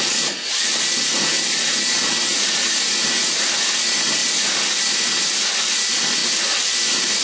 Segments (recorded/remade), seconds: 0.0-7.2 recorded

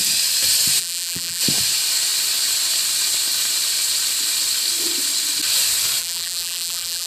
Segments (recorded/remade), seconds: 0.0-0.8 recorded; 0.8-1.4 remade; 1.4-6.0 recorded; 6.0-7.1 remade